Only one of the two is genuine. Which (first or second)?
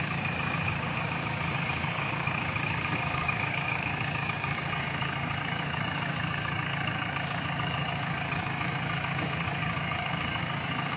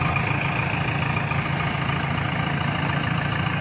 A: second